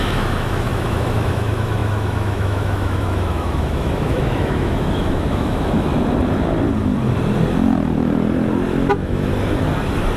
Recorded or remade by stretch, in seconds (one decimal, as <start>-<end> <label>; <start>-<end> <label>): 0.0-5.9 remade; 5.9-8.9 recorded; 8.9-9.3 remade; 9.3-10.2 recorded